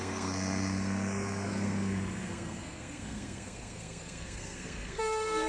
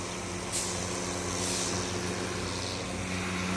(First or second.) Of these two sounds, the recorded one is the second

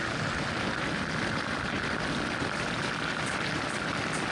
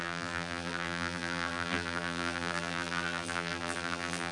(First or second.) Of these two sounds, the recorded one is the first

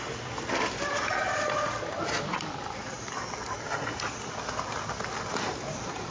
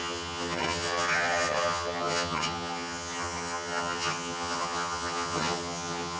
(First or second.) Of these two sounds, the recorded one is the first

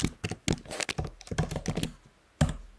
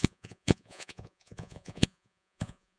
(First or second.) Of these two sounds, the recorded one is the first